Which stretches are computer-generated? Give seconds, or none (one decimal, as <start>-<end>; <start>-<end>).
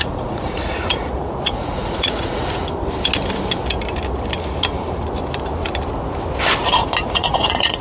0.0-2.6; 7.0-7.8